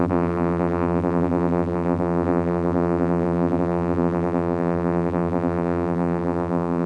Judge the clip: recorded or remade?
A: remade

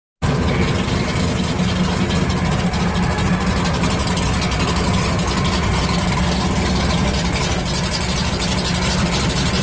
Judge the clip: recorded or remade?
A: recorded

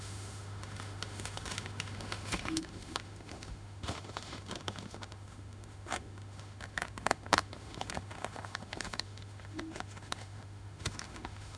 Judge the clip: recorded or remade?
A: remade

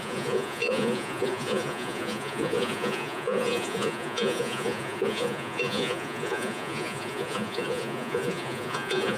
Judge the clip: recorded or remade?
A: remade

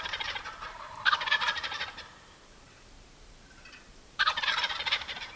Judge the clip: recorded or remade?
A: remade